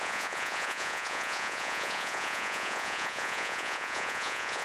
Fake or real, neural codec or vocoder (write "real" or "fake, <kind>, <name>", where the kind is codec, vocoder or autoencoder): fake, vocoder, Vocos